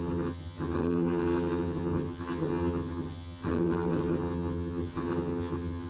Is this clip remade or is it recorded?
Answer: remade